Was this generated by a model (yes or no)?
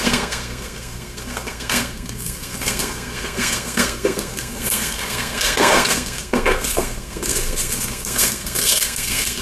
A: yes